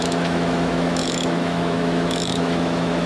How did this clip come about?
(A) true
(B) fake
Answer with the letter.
B